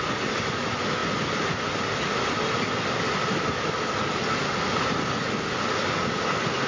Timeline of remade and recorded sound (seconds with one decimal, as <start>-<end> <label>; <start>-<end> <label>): 0.0-6.7 recorded

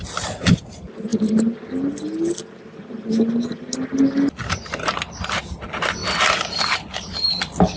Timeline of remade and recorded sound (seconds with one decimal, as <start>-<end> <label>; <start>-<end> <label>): 0.0-7.8 recorded